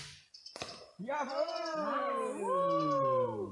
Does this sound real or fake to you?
real